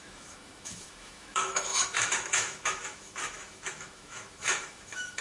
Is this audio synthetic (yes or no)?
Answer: yes